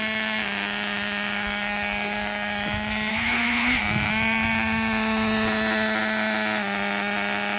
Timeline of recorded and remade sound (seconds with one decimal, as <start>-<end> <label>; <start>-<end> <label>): 0.0-3.1 recorded; 3.1-3.8 remade; 3.8-7.6 recorded